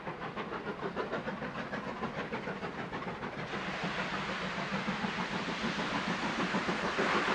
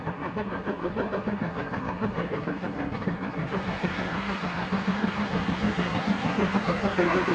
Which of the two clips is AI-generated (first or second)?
second